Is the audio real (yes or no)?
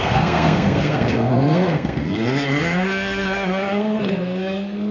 no